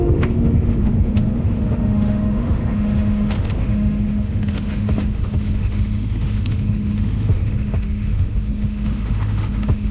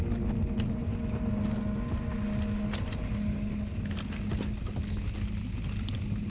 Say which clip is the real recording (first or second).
second